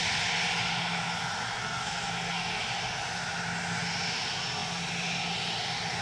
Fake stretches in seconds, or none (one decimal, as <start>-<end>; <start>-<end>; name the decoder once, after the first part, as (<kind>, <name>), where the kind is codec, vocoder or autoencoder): 1.6-2.6 (codec, SNAC)